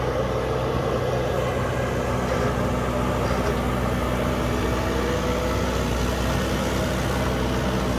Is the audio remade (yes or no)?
no